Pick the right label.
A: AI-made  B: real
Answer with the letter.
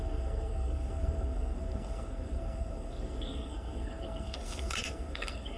A